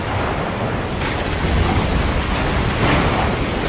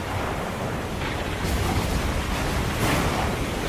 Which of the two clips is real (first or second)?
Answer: first